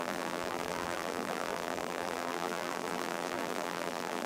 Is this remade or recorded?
remade